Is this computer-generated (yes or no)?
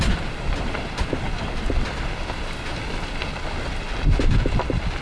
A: no